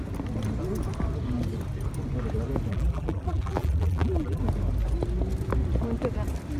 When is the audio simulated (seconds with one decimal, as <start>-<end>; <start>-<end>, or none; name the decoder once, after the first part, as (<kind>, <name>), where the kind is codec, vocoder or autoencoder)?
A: 2.7-4.4 (vocoder, BigVGAN v2)